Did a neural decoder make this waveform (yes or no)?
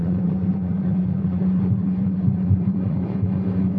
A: yes